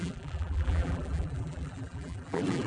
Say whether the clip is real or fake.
fake